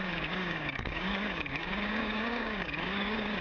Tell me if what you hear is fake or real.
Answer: fake